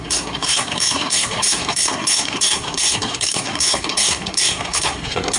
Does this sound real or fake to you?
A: fake